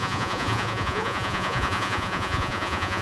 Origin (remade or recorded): remade